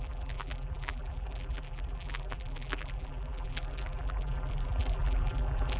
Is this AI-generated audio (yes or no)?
yes